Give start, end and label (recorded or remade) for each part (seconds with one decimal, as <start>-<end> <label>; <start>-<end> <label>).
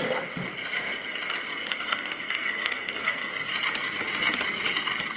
0.0-1.7 recorded; 1.7-3.3 remade; 3.3-5.2 recorded